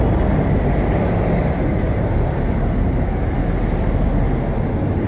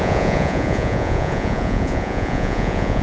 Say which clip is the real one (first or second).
first